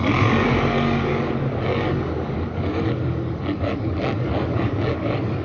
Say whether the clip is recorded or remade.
remade